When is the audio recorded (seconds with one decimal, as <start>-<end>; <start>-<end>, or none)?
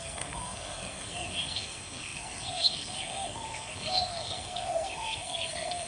none